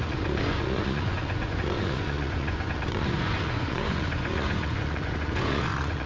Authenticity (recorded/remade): remade